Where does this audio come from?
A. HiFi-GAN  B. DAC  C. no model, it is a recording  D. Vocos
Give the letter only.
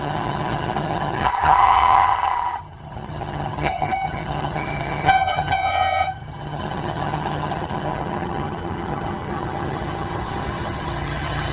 A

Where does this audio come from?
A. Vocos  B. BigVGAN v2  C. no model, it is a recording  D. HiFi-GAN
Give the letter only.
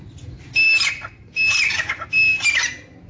C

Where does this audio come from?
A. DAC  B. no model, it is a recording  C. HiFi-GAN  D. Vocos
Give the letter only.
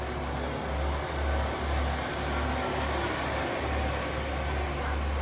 B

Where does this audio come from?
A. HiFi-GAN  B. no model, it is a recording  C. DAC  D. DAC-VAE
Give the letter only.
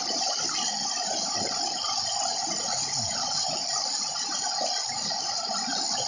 B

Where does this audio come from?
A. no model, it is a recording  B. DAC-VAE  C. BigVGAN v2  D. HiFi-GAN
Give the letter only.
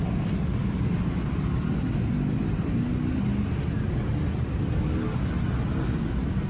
A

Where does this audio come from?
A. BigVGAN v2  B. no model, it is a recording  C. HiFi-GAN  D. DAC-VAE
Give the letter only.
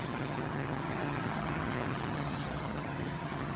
C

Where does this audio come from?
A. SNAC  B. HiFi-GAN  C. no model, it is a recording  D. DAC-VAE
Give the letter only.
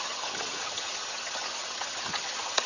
B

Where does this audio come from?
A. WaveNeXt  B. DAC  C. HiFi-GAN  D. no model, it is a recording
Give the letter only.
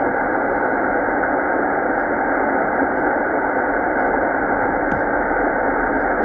D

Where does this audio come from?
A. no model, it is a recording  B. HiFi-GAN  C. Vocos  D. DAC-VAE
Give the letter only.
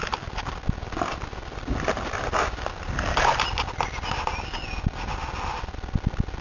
A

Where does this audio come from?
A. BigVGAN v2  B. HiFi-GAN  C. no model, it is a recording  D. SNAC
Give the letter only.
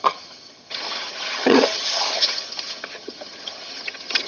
B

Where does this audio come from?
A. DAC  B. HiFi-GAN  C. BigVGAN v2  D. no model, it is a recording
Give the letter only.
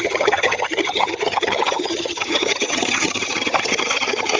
B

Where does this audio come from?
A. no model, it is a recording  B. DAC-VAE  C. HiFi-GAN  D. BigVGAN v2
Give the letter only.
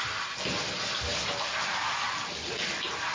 A